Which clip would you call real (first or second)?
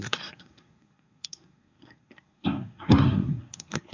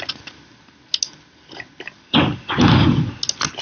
second